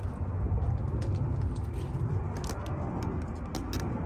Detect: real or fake real